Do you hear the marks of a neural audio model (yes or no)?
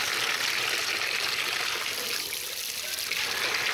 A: no